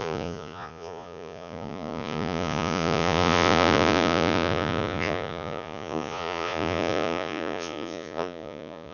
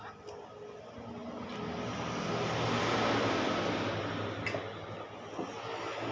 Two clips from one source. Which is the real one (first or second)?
second